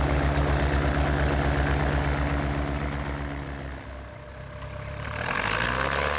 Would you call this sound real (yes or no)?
yes